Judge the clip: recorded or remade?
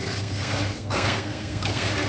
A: remade